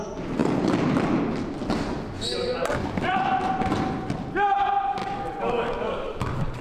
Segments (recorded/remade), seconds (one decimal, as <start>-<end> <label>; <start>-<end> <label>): 0.0-5.0 recorded; 5.0-6.6 remade